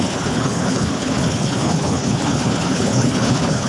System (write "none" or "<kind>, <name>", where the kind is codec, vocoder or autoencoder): codec, HILCodec